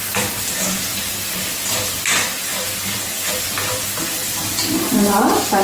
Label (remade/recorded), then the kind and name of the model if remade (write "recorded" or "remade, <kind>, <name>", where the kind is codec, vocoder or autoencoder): remade, vocoder, BigVGAN v2